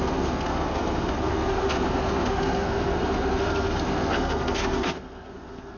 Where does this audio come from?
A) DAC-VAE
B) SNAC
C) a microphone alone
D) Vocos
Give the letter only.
B